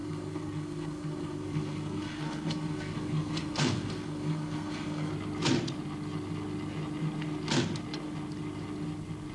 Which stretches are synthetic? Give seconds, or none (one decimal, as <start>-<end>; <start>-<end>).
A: 0.0-5.1